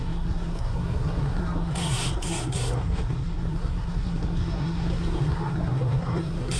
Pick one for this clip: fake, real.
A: fake